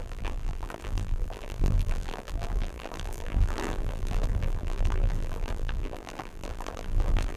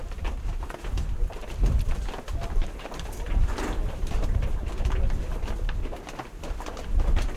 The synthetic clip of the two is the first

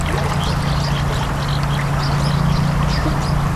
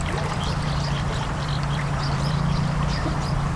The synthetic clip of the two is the second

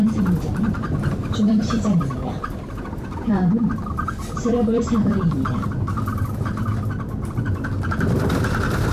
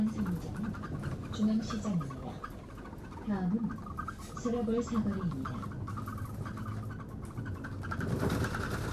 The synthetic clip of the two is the first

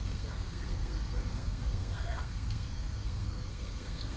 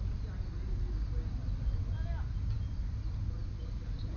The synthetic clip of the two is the first